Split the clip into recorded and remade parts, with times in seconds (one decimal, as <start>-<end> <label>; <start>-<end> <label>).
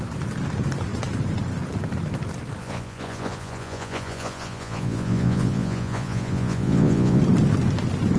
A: 0.0-2.6 recorded; 2.6-7.2 remade; 7.2-8.2 recorded